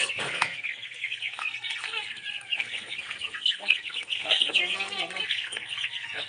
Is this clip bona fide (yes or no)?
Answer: no